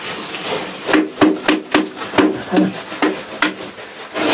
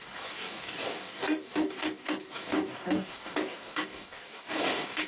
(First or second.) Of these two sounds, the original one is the first